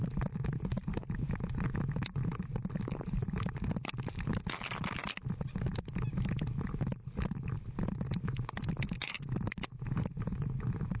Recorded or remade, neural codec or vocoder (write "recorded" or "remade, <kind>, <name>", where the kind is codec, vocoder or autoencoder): recorded